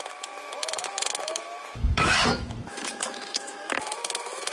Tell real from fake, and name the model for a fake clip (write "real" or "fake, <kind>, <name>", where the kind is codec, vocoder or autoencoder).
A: fake, autoencoder, DAC-VAE